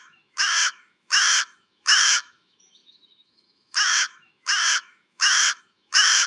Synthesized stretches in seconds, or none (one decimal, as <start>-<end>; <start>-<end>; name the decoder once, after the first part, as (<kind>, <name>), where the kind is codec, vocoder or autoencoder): 0.0-6.3 (autoencoder, DAC-VAE)